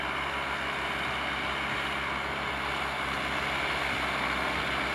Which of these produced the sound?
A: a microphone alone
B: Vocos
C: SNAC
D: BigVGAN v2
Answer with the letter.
A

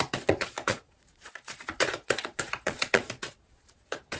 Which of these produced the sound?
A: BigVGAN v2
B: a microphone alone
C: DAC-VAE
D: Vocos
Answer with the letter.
D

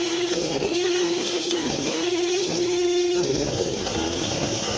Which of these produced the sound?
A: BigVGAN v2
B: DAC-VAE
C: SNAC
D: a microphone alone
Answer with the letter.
C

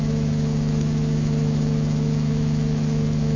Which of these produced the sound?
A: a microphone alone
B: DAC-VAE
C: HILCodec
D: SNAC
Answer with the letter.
B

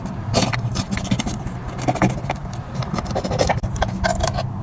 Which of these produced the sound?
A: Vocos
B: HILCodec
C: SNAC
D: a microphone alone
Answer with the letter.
D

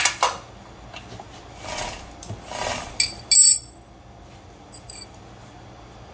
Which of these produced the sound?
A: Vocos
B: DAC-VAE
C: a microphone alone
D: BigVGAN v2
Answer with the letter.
C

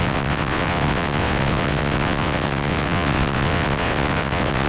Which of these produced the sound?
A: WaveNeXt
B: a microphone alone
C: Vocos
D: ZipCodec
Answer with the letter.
A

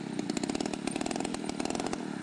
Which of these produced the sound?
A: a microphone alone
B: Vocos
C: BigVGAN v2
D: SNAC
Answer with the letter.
A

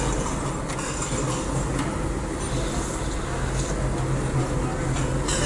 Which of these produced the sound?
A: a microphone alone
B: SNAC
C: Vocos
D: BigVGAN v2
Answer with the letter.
A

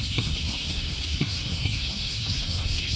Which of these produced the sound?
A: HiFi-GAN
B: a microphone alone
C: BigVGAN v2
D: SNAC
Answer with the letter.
D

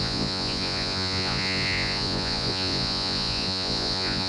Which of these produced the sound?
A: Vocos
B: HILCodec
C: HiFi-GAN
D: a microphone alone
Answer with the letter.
A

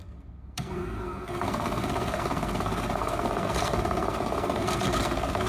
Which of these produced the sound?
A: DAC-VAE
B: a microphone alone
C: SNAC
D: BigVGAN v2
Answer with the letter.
C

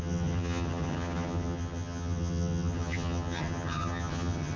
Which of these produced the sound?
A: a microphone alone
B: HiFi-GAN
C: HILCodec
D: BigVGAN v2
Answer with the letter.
B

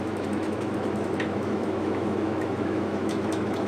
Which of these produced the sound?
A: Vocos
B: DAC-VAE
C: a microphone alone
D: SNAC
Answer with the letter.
B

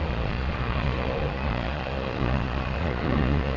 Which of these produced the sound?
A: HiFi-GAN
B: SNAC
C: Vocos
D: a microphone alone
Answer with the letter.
C